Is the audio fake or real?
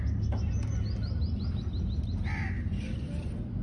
real